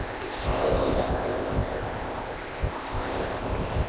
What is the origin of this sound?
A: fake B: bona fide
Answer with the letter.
A